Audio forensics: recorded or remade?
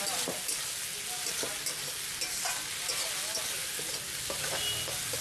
recorded